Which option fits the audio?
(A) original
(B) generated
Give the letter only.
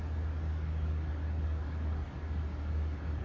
B